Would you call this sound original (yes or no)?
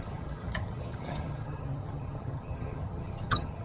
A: no